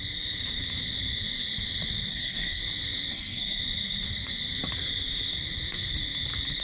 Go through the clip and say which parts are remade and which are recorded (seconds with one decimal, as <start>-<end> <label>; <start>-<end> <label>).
0.0-2.1 recorded; 2.1-2.6 remade; 2.6-3.1 recorded; 3.1-3.6 remade; 3.6-6.6 recorded